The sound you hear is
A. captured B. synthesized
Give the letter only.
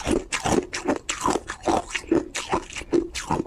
A